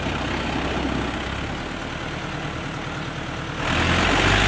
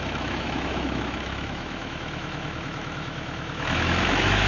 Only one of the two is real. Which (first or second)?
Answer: first